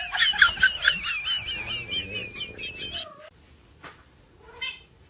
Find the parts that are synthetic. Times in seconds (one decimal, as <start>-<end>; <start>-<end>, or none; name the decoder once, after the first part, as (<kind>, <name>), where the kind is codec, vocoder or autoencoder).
none